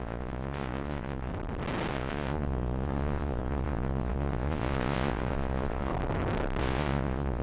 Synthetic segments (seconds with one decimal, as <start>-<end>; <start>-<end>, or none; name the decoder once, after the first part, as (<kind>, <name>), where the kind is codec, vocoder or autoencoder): 0.0-1.3 (vocoder, Vocos); 1.9-5.9; 6.6-7.4